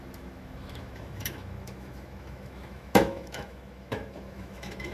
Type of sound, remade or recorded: remade